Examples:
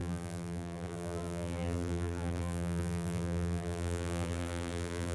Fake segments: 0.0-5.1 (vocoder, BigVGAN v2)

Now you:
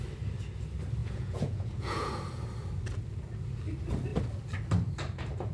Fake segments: 1.0-2.2 (vocoder, Vocos)

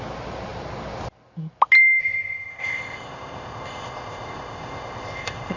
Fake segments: 2.0-5.6 (codec, ZipCodec)